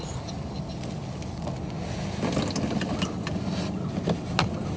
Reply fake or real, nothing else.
real